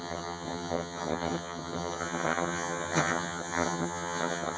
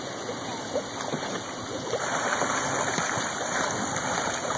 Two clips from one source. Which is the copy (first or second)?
first